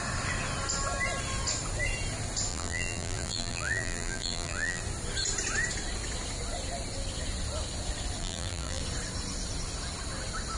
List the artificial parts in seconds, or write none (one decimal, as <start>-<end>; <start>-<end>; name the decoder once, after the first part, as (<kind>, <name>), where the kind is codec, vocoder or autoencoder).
2.5-4.8 (vocoder, BigVGAN v2); 8.2-8.8